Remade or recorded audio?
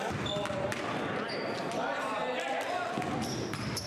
recorded